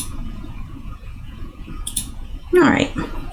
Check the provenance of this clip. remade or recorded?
remade